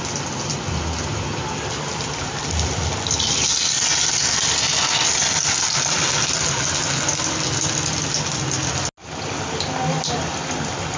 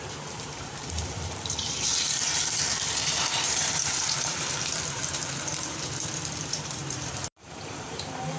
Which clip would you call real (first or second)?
first